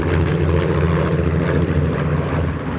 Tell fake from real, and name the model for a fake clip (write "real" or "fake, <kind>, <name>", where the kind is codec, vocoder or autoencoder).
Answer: real